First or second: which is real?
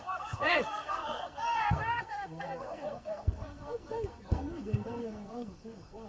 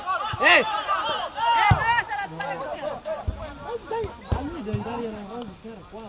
second